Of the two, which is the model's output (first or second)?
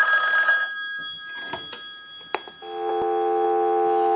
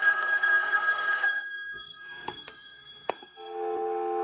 second